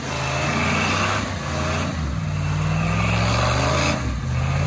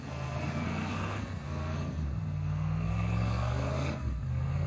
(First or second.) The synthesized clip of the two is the second